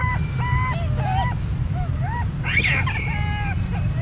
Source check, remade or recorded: recorded